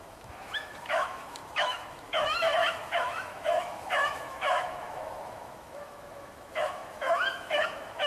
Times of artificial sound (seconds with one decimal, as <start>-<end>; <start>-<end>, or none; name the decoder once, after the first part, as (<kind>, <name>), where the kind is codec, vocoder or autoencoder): 0.0-8.1 (autoencoder, DAC-VAE)